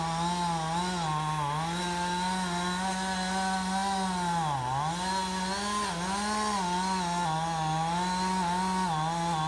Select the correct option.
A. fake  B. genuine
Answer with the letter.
B